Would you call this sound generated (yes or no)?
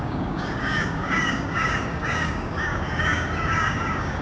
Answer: yes